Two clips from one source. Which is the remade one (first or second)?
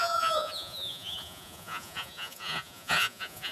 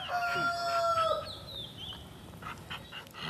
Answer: first